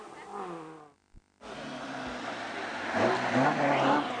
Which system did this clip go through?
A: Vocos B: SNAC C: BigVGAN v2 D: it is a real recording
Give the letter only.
D